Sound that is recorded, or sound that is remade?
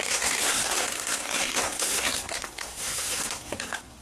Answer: remade